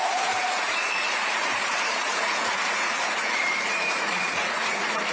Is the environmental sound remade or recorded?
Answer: remade